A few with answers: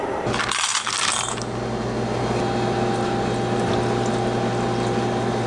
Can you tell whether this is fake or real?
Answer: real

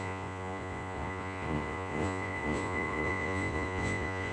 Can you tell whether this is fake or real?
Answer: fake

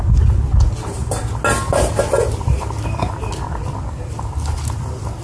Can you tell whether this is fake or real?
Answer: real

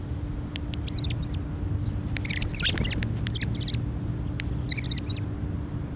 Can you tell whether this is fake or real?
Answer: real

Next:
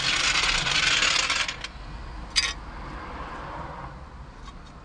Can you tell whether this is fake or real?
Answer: real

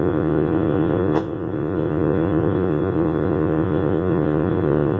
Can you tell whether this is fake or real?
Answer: fake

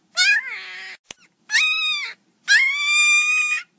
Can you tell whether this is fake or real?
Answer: real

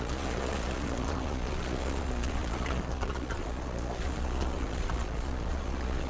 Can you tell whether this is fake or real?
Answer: fake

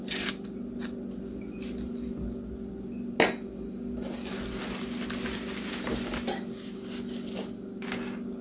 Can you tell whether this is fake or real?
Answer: real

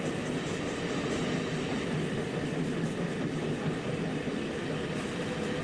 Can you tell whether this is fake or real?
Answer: real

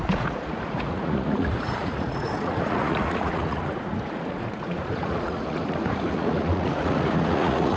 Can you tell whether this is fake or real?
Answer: fake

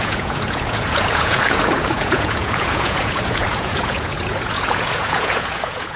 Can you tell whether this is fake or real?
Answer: fake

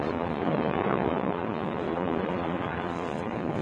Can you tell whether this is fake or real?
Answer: fake